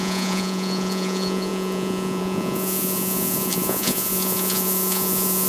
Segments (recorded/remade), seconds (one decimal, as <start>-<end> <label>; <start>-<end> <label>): 0.0-5.5 remade